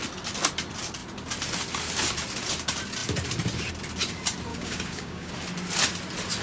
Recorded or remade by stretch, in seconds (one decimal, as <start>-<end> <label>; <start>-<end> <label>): 0.0-4.5 recorded; 4.5-5.3 remade; 5.3-6.4 recorded